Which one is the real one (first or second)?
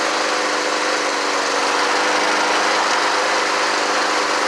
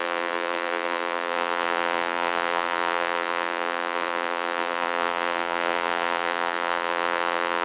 first